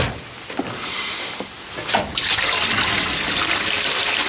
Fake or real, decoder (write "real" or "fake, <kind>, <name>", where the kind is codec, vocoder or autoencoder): real